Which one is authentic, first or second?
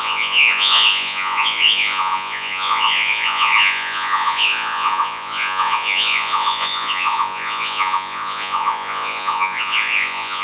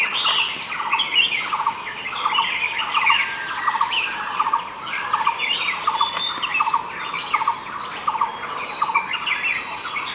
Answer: second